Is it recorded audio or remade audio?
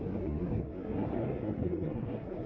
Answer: remade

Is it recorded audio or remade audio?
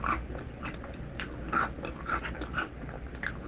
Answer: recorded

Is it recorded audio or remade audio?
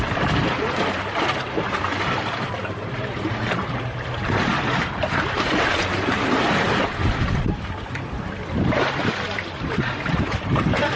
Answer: remade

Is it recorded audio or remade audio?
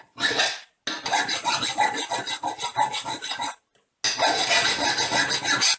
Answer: recorded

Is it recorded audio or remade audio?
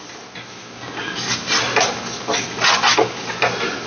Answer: recorded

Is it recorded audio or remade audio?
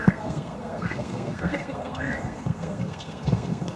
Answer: remade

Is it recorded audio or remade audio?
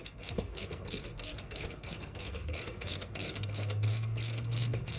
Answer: remade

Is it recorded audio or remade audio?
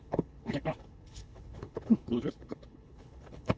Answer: remade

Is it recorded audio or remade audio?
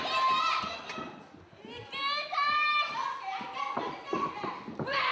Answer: recorded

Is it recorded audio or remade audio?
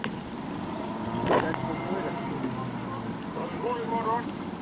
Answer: recorded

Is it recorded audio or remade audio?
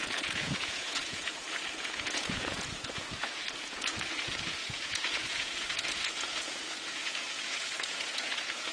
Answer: remade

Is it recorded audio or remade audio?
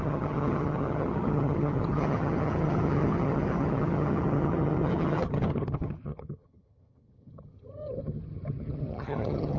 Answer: remade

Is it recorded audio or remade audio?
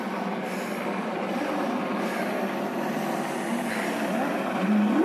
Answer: recorded